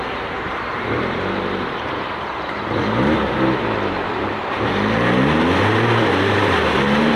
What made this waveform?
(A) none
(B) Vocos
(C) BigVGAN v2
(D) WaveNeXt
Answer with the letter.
C